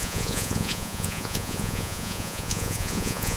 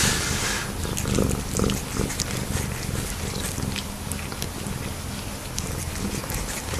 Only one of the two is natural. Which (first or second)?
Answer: second